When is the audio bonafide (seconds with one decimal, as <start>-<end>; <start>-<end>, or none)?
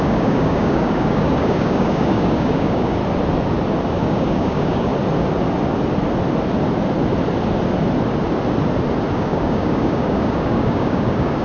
3.0-3.9; 4.9-9.1